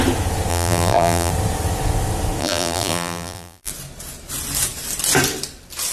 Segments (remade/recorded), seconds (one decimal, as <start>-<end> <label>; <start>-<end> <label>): 0.0-0.5 recorded; 0.5-1.3 remade; 1.3-2.4 recorded; 2.4-3.7 remade; 3.7-5.9 recorded